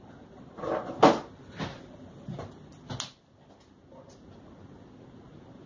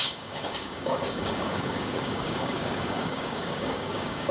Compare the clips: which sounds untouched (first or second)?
first